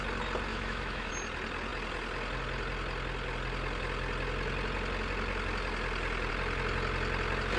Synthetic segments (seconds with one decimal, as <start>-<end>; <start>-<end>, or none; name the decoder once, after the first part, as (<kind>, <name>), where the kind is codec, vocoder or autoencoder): 0.5-1.1 (autoencoder, DAC-VAE)